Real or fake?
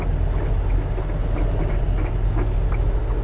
real